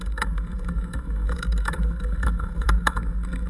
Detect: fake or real fake